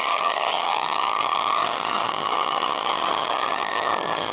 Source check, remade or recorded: remade